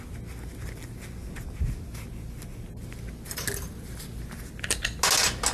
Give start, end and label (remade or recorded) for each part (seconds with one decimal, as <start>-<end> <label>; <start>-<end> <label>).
0.0-5.5 recorded